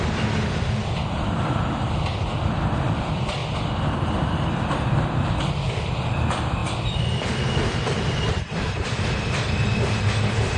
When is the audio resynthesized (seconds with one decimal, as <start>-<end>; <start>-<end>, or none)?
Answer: 0.0-10.6